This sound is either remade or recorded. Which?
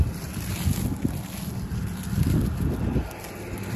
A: recorded